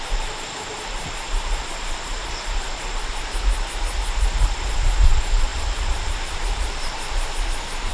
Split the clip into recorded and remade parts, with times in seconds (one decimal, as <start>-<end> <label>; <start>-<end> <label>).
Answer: 0.0-0.7 recorded; 0.7-3.1 remade; 3.1-5.5 recorded; 5.5-7.3 remade; 7.3-7.9 recorded